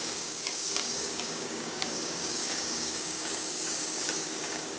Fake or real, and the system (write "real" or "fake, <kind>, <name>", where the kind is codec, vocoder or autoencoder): fake, codec, DAC